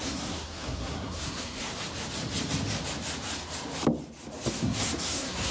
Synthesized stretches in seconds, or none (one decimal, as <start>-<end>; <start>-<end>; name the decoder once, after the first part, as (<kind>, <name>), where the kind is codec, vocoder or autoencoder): 0.0-1.7 (codec, SNAC); 4.5-5.5